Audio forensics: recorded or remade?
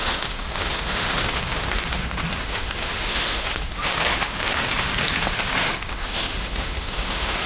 remade